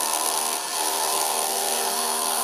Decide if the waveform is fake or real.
fake